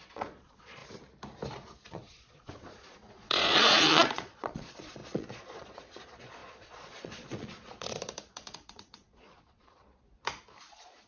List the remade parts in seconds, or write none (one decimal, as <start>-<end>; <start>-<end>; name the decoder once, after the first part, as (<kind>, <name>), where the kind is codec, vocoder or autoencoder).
0.0-0.8 (vocoder, Vocos); 1.9-10.2; 10.7-11.1